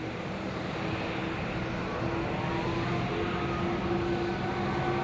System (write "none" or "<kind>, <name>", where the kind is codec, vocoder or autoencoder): none